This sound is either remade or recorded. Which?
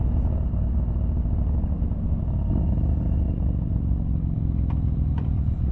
recorded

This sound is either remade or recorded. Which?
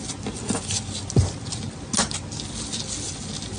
recorded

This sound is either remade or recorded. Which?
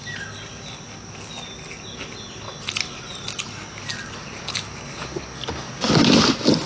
recorded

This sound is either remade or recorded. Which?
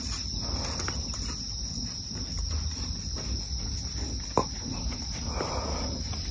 recorded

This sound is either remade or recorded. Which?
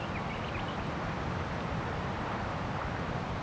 recorded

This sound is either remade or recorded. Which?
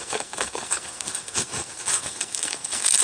remade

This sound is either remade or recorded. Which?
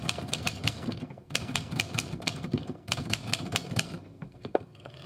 remade